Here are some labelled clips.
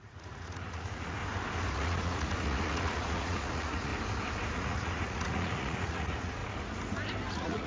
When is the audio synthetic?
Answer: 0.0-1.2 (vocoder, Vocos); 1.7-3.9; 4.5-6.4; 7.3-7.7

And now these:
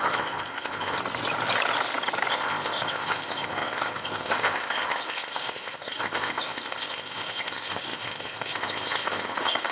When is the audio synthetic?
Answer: 0.0-1.0 (codec, ZipCodec); 2.3-9.7

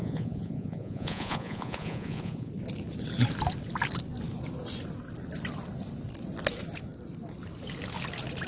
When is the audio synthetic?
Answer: 0.0-2.5 (vocoder, Vocos)

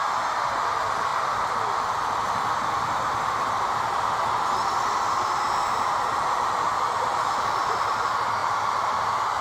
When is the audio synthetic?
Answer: 5.6-7.5 (vocoder, BigVGAN v2); 8.4-9.0

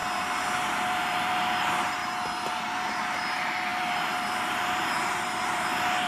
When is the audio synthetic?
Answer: 0.9-2.0 (vocoder, BigVGAN v2); 2.6-6.1

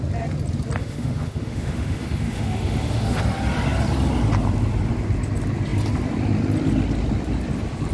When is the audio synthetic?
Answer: 0.8-3.2 (autoencoder, DAC-VAE)

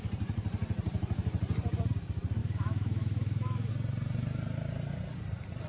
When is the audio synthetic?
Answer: 2.4-3.7 (autoencoder, DAC-VAE)

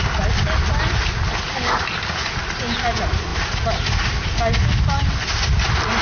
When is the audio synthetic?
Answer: none